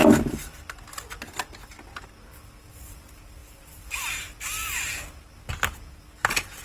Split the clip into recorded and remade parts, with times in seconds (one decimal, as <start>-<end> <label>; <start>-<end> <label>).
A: 0.0-6.6 recorded